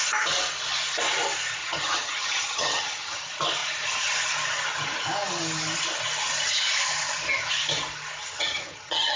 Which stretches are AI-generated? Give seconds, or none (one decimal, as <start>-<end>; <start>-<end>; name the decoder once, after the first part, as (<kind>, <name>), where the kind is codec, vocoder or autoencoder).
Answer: 1.6-3.2 (vocoder, HiFi-GAN); 8.2-9.2